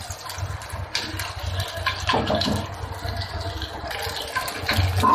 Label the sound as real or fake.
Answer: real